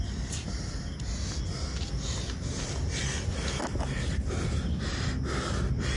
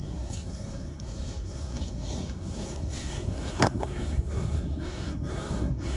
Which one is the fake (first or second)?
second